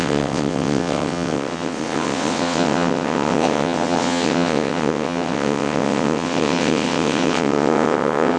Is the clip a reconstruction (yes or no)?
yes